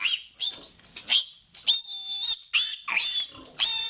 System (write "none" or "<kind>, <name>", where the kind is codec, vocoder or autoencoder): none